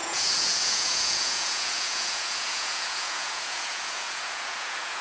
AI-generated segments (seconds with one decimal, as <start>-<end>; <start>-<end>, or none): 0.0-5.0